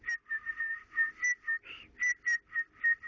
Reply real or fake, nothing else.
real